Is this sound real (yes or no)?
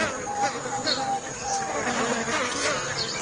yes